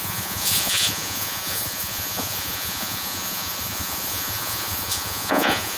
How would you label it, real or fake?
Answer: fake